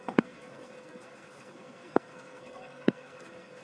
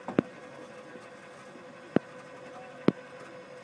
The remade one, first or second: first